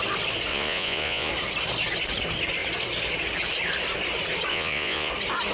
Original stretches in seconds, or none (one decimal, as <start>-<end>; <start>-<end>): 0.0-0.5; 1.3-4.5; 5.1-5.5